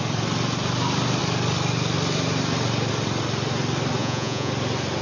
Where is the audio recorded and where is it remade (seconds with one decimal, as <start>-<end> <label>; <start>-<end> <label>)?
0.0-4.0 recorded; 4.0-4.5 remade; 4.5-5.0 recorded